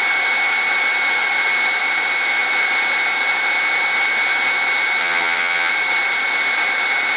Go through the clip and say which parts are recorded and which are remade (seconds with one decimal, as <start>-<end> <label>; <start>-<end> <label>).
0.0-5.0 recorded; 5.0-5.7 remade; 5.7-7.2 recorded